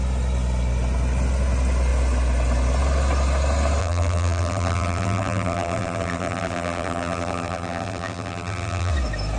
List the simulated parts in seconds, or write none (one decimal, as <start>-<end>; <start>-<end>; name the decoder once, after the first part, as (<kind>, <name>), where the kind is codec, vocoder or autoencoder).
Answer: 3.8-8.9 (vocoder, BigVGAN v2)